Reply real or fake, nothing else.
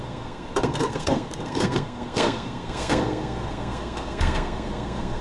fake